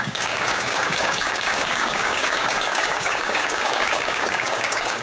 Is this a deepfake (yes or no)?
yes